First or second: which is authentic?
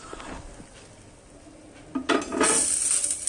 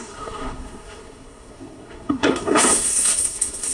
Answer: first